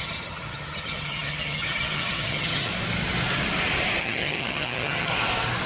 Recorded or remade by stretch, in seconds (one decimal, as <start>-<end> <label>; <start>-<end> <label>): 0.0-2.7 remade; 2.7-4.0 recorded; 4.0-5.1 remade; 5.1-5.7 recorded